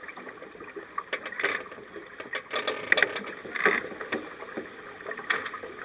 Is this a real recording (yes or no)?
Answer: yes